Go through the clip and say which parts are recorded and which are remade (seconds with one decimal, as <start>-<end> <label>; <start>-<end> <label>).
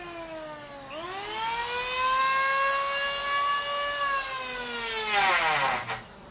0.0-6.3 recorded